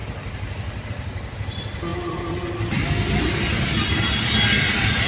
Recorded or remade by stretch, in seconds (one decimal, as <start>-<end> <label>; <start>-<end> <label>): 0.0-5.1 recorded